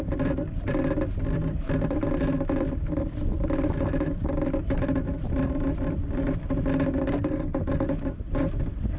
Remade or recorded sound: remade